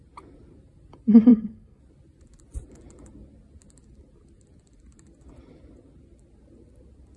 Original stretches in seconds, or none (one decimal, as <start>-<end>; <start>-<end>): 0.0-1.3; 1.8-7.2